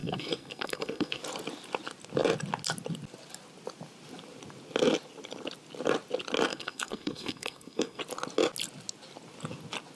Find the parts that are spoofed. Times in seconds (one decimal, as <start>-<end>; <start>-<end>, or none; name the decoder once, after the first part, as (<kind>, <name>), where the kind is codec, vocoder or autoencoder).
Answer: 0.0-1.2 (codec, SNAC); 6.5-8.0